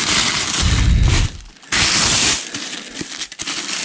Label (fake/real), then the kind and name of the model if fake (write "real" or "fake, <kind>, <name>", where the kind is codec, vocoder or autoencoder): real